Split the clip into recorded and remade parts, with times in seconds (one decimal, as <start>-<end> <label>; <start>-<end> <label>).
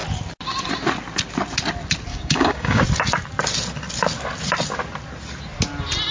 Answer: 0.0-2.1 recorded; 2.1-2.8 remade; 2.8-6.1 recorded